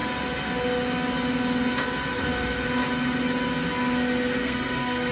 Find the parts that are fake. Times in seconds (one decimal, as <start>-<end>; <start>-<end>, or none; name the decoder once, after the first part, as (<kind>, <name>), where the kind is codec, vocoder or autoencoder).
4.4-5.1 (codec, SNAC)